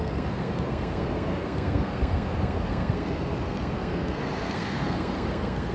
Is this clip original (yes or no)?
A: no